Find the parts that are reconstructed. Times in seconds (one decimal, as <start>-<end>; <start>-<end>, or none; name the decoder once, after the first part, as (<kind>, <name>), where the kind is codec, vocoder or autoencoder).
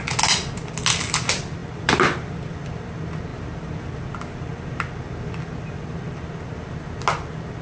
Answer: 1.6-2.5 (vocoder, BigVGAN v2); 3.3-4.0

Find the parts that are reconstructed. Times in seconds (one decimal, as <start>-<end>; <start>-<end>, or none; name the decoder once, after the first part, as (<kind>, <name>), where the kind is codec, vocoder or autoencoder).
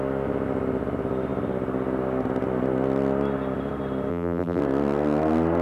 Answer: 4.1-4.6 (vocoder, BigVGAN v2)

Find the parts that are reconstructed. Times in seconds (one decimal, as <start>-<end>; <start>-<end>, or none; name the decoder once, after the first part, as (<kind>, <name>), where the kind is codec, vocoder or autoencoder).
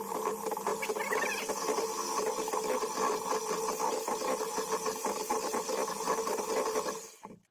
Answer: none